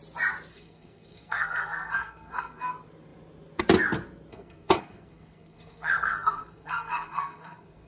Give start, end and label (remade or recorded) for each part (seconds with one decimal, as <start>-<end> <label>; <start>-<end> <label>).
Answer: 0.0-0.5 recorded; 0.5-2.7 remade; 2.7-4.3 recorded; 4.3-7.9 remade